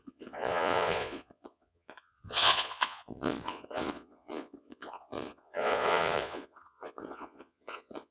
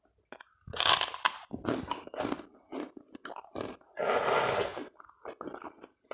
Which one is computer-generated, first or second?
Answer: first